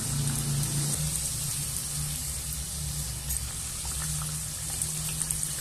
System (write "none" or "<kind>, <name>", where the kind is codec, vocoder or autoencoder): none